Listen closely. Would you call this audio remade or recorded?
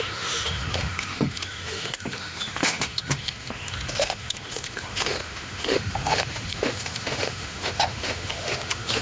remade